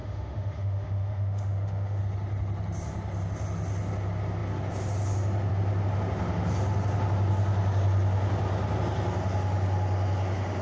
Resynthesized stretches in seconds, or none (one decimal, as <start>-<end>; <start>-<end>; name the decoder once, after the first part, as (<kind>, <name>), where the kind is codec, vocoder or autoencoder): 0.0-2.0 (autoencoder, DAC-VAE)